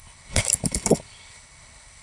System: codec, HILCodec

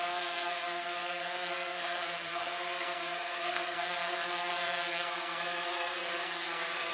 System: codec, SNAC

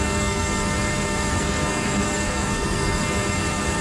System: codec, SNAC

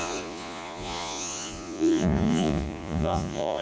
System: vocoder, Vocos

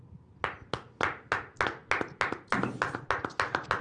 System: none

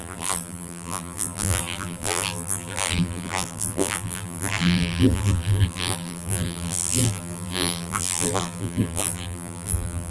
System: vocoder, BigVGAN v2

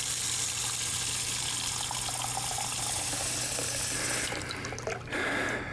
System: none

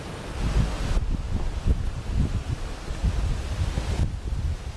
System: none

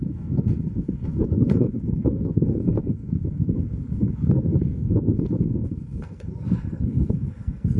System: codec, SNAC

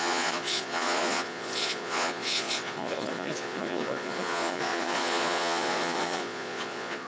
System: vocoder, Vocos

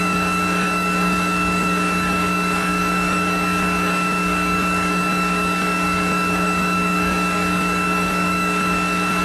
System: codec, DAC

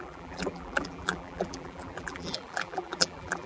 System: vocoder, BigVGAN v2